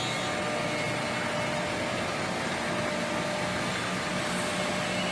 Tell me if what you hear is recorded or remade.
recorded